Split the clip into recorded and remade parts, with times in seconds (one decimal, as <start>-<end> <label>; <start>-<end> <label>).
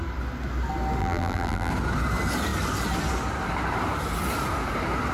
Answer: 0.0-1.0 recorded; 1.0-1.7 remade; 1.7-5.1 recorded